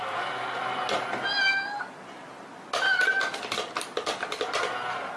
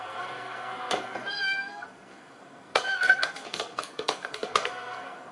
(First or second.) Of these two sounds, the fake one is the second